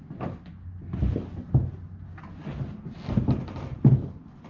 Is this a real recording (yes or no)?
yes